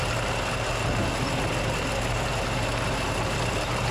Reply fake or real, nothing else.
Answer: real